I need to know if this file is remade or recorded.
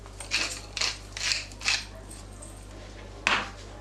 recorded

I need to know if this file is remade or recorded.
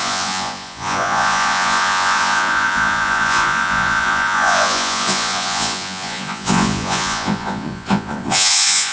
remade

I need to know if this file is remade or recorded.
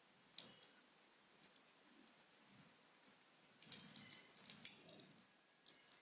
recorded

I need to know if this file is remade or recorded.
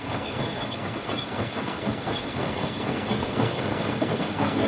remade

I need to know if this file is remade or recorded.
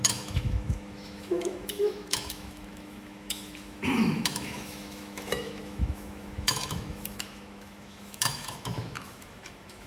remade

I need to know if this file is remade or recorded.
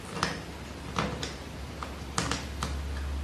recorded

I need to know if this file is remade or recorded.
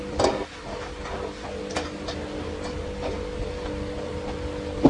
recorded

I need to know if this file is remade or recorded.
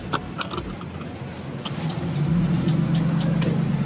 recorded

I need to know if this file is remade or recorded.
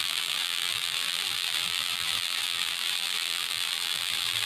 remade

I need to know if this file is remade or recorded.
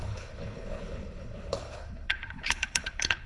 remade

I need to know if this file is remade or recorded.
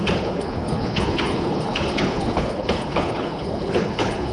remade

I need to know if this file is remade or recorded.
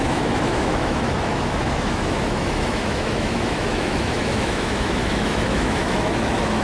remade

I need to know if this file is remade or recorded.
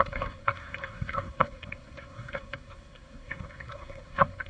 remade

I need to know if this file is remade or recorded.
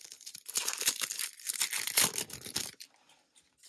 recorded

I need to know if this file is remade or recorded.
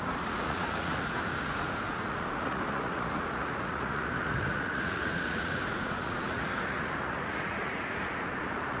remade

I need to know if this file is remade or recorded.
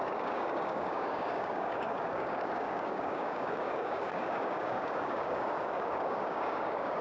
remade